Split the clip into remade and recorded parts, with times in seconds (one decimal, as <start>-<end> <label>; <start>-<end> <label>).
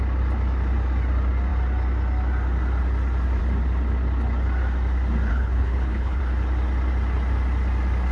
0.0-5.3 recorded; 5.3-6.2 remade; 6.2-8.1 recorded